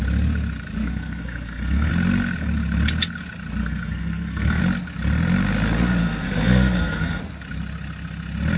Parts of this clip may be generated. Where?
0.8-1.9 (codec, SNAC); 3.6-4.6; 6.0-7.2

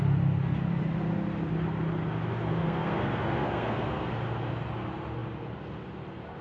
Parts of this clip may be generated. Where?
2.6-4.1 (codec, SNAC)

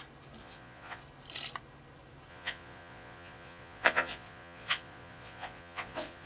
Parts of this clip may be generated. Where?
0.4-1.0 (vocoder, Vocos); 2.3-6.3

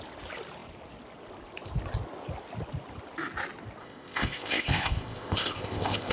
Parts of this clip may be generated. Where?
3.8-6.1 (codec, ZipCodec)